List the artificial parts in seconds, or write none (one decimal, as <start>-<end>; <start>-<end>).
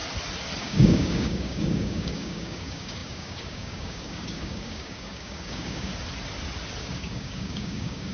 0.6-5.9; 6.8-8.1